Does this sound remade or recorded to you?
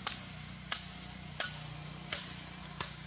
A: recorded